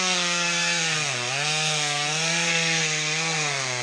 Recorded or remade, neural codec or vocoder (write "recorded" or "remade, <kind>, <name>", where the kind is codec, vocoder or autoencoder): remade, codec, SNAC